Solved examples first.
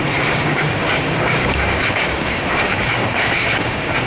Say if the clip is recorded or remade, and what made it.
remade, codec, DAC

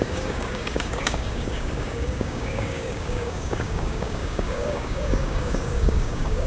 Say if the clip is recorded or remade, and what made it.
remade, codec, DAC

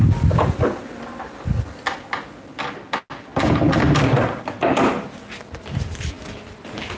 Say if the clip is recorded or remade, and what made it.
recorded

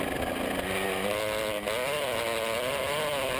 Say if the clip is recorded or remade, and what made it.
recorded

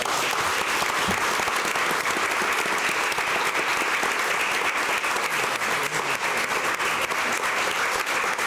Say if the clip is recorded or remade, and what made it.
recorded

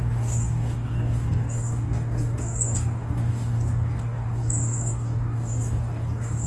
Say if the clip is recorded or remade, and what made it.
remade, codec, DAC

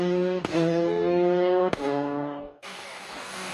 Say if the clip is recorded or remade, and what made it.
remade, codec, DAC